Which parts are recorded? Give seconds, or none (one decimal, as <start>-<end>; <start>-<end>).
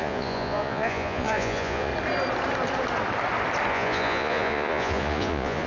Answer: 1.9-3.7